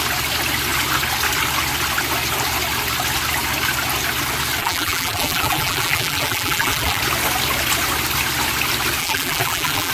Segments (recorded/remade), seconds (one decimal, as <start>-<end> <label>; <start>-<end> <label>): 0.0-4.6 recorded; 4.6-7.0 remade; 7.0-9.0 recorded; 9.0-9.9 remade